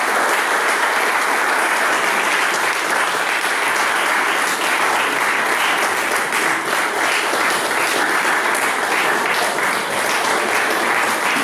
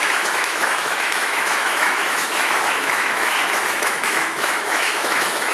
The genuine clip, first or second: first